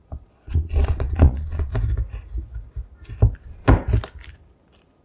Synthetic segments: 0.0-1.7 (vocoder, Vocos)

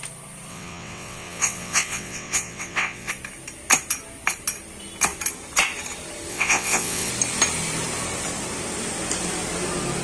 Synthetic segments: 0.5-3.1 (vocoder, WaveNeXt); 6.3-7.1

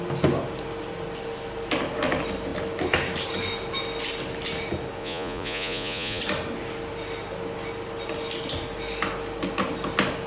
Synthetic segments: 5.0-6.2 (vocoder, Vocos)